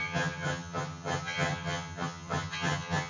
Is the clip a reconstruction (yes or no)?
yes